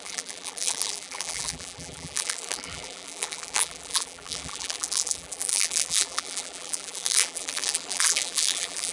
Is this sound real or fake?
fake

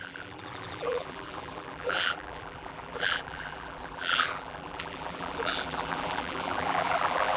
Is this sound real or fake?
fake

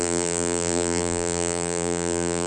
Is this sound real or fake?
fake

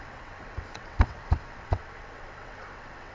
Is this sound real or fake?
fake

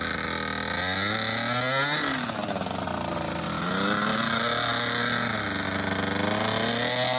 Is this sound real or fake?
real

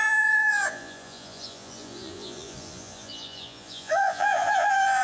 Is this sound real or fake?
fake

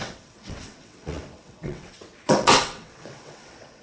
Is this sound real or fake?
fake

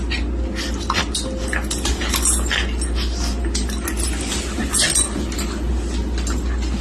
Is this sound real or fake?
real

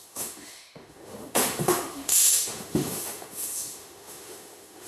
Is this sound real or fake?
fake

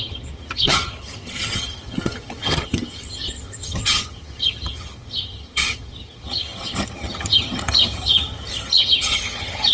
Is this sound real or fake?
fake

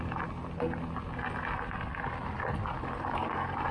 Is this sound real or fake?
real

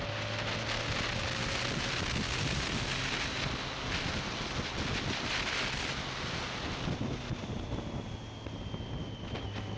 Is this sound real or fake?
real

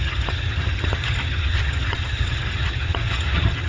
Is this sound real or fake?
fake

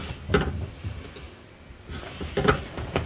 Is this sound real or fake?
real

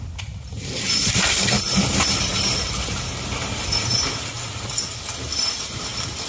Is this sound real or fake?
real